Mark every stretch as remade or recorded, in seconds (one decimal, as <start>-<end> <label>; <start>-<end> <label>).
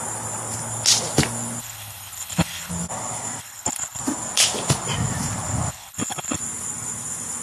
0.0-1.6 recorded; 1.6-2.7 remade; 2.7-3.4 recorded; 3.4-4.0 remade; 4.0-5.7 recorded; 5.7-6.4 remade; 6.4-7.4 recorded